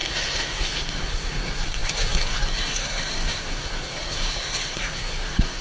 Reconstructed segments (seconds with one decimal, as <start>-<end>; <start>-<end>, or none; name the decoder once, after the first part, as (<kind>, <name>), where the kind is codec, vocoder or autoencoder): 0.0-5.6 (codec, SNAC)